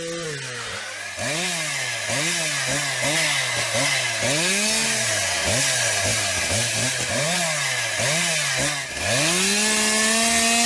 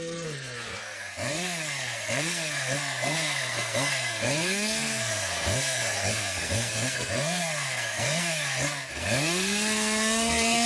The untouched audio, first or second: first